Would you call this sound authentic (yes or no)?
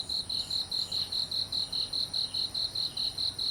yes